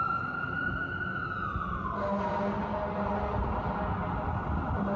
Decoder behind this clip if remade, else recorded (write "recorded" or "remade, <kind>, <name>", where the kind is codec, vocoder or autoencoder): recorded